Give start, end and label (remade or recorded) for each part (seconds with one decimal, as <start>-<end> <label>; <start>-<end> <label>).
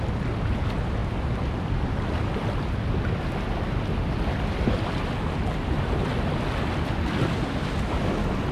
0.0-8.5 recorded